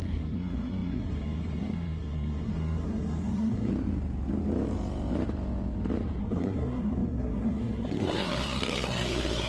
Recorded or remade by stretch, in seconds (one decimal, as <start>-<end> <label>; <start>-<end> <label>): 0.0-3.7 remade; 3.7-6.2 recorded; 6.2-9.5 remade